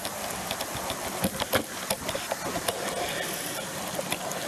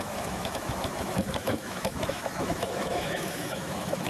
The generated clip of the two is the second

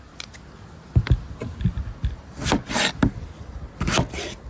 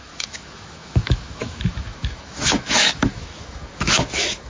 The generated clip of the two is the second